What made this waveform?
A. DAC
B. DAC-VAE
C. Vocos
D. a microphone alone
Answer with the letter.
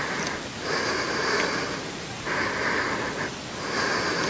D